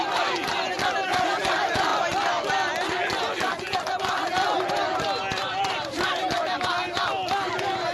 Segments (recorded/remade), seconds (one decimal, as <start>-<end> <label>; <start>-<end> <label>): 0.0-5.4 recorded; 5.4-6.0 remade; 6.0-7.9 recorded